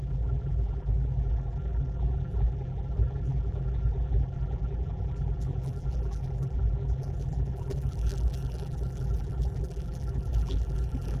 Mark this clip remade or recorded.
remade